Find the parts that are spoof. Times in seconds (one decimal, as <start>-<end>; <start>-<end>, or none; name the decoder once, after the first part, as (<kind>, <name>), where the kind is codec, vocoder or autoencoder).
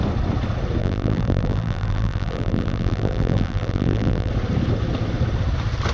0.8-4.3 (vocoder, BigVGAN v2)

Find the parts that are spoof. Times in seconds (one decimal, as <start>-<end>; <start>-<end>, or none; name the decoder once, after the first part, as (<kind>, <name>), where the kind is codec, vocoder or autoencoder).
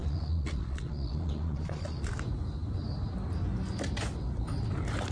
0.0-2.1 (vocoder, Vocos)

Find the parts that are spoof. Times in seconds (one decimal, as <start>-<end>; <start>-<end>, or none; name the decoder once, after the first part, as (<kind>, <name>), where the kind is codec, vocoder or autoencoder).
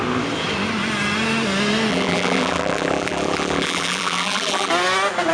1.9-4.7 (vocoder, BigVGAN v2)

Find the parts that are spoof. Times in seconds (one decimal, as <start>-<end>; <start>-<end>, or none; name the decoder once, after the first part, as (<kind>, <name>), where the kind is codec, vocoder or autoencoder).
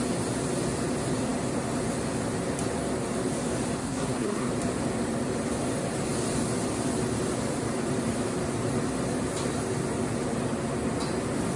3.8-4.5 (codec, SNAC)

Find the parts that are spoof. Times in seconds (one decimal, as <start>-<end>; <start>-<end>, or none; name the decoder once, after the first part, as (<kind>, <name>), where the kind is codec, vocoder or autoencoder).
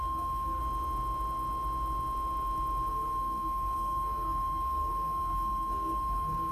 0.0-0.6 (codec, SNAC); 2.9-6.5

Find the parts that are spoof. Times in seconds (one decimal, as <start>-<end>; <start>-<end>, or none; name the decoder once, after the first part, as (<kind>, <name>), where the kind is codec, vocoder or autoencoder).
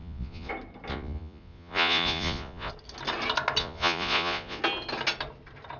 0.0-0.5 (vocoder, Vocos); 0.9-2.7; 3.6-4.6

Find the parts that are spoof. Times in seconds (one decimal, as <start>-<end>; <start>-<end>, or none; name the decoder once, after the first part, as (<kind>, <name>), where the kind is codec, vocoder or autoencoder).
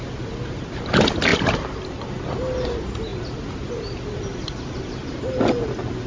none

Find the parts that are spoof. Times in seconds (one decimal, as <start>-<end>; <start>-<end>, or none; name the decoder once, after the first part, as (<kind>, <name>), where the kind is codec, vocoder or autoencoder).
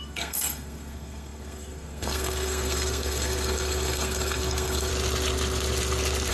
0.0-4.9 (codec, SNAC)